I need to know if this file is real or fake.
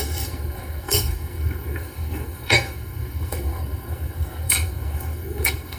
fake